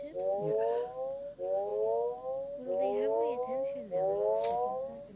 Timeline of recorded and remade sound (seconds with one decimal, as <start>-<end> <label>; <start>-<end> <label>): 0.0-5.2 recorded